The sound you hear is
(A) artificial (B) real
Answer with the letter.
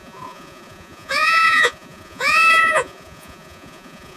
A